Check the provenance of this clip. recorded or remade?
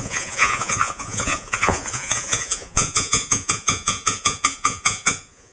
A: remade